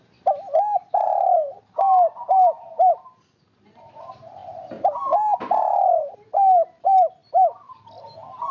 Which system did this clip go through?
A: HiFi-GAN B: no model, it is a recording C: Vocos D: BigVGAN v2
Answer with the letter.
B